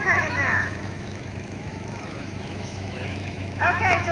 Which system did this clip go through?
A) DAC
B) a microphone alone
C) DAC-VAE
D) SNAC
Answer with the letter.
C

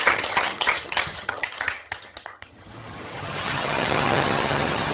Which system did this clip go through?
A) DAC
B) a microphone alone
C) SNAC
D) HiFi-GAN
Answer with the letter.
D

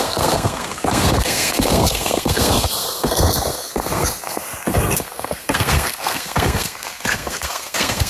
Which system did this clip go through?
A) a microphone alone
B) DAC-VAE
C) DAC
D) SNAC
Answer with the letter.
D